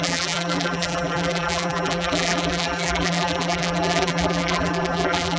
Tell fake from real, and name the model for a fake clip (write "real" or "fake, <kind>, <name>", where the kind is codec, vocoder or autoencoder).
fake, vocoder, BigVGAN v2